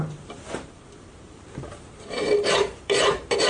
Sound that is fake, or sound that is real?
fake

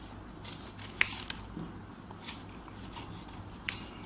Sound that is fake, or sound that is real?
real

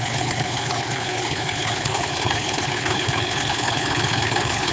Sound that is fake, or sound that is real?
fake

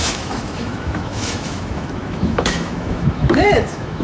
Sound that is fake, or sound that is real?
fake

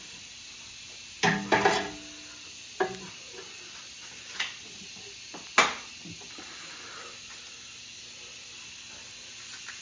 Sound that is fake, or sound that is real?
real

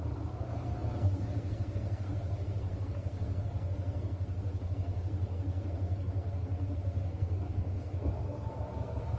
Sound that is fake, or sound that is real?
fake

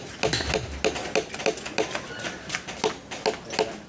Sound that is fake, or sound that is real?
real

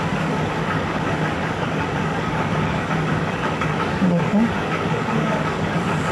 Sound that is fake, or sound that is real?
fake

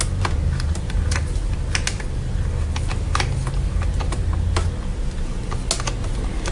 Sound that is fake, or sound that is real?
real